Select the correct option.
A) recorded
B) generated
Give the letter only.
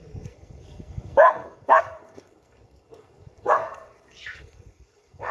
B